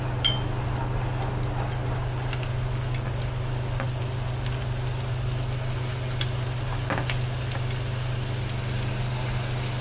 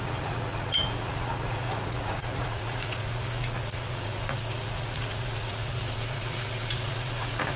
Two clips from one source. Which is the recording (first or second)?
first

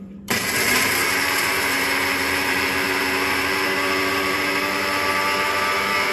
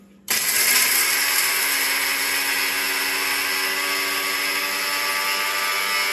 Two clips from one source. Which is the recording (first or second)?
second